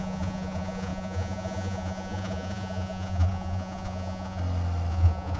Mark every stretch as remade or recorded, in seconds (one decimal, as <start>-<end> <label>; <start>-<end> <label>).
0.0-4.4 remade; 4.4-4.9 recorded; 4.9-5.4 remade